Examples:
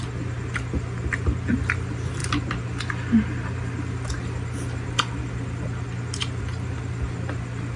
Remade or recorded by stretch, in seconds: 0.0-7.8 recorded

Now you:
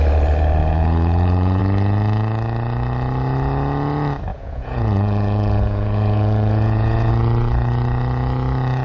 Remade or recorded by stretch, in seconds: 0.0-0.6 recorded; 0.6-1.6 remade; 1.6-4.3 recorded; 4.3-7.1 remade; 7.1-8.8 recorded

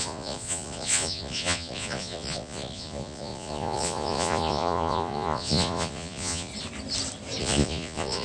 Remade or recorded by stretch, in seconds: 0.0-6.5 remade; 6.5-7.4 recorded; 7.4-8.2 remade

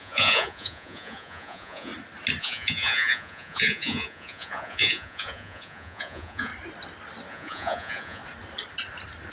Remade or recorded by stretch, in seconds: 0.0-1.9 remade; 1.9-2.4 recorded; 2.4-6.5 remade; 6.5-7.3 recorded; 7.3-8.2 remade; 8.2-9.3 recorded

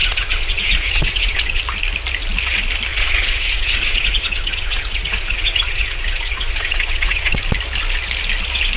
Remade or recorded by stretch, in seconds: 0.0-1.6 remade; 1.6-2.9 recorded; 2.9-7.4 remade; 7.4-8.8 recorded

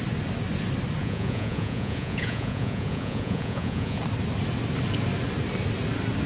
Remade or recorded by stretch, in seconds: 0.0-1.0 recorded; 1.0-4.0 remade; 4.0-6.3 recorded